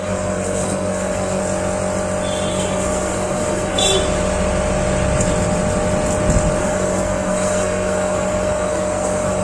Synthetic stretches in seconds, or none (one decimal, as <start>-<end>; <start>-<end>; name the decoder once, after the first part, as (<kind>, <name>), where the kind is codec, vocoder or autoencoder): 0.0-1.4 (codec, SNAC); 2.5-3.8; 6.6-9.4